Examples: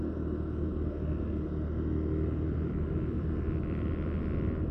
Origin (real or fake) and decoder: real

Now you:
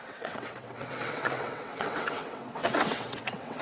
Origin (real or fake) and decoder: fake, vocoder, WaveNeXt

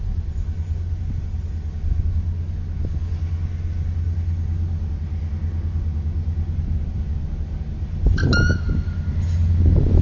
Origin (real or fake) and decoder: real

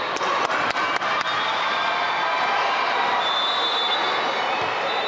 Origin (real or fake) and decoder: real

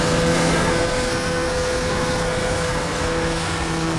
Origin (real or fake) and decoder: fake, codec, SNAC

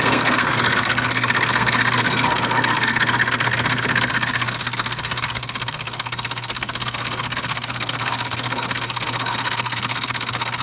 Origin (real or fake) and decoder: fake, codec, SNAC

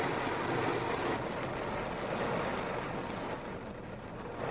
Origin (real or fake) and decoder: real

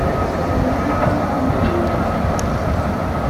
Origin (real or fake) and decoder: real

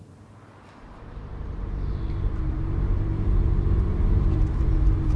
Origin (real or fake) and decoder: fake, vocoder, BigVGAN v2